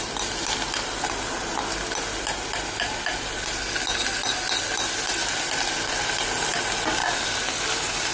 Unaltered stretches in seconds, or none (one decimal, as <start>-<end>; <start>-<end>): 0.0-8.1